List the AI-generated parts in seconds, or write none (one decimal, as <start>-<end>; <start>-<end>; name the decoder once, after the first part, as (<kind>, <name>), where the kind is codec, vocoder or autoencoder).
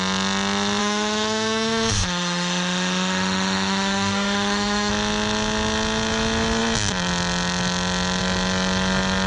0.8-4.9 (autoencoder, DAC-VAE)